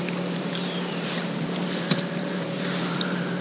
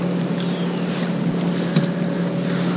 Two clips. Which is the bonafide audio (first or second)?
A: second